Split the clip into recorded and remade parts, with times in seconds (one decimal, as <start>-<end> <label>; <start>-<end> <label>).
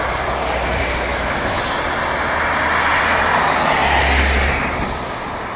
0.0-1.1 recorded; 1.1-1.6 remade; 1.6-5.6 recorded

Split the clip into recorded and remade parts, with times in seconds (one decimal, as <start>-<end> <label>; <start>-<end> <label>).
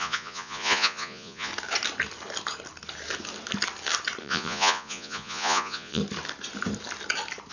0.0-1.5 remade; 1.5-4.2 recorded; 4.2-6.0 remade; 6.0-7.5 recorded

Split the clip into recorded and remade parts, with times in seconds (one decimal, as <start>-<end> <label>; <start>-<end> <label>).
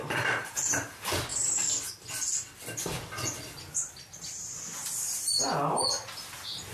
0.0-6.7 recorded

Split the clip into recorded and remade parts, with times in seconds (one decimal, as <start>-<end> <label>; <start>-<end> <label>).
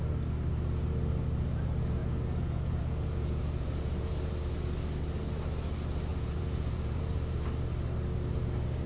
0.0-2.0 recorded; 2.0-4.3 remade; 4.3-6.1 recorded; 6.1-7.0 remade; 7.0-8.9 recorded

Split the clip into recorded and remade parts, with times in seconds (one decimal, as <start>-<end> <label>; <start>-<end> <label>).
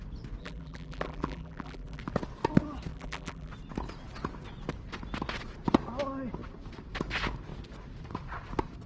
0.0-0.4 recorded; 0.4-2.0 remade; 2.0-2.9 recorded; 2.9-3.5 remade; 3.5-8.9 recorded